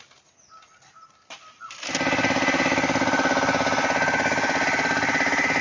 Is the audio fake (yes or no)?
no